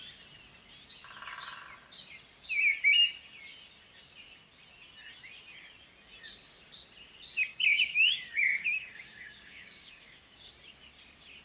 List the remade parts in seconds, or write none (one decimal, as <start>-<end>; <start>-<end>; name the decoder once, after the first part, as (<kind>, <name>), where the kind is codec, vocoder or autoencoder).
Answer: 7.5-10.5 (codec, DAC)